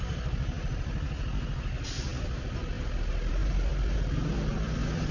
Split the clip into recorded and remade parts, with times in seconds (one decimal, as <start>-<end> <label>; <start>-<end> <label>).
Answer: 0.0-5.1 recorded